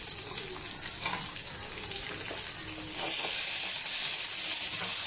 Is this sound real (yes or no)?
yes